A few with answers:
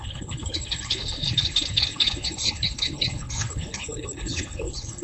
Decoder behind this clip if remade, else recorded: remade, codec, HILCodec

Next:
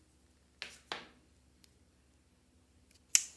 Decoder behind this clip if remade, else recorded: recorded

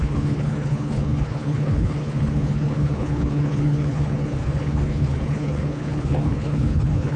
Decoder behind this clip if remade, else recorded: remade, codec, HILCodec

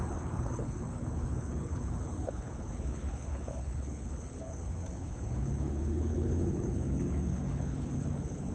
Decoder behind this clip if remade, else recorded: remade, codec, HILCodec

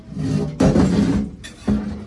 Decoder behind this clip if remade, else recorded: recorded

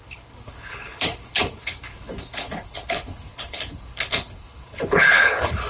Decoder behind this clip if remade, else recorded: remade, codec, HILCodec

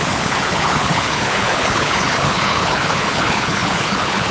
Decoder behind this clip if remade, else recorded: remade, codec, HILCodec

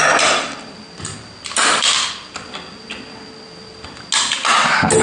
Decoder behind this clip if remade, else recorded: recorded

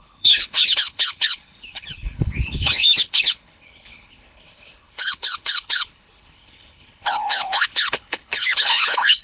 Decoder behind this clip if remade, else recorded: remade, codec, HILCodec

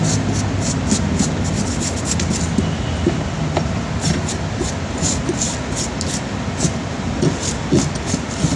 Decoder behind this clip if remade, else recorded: recorded